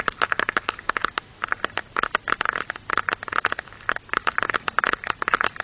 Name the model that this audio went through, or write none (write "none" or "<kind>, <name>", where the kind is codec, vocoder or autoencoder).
none